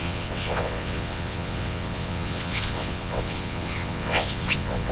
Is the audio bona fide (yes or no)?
no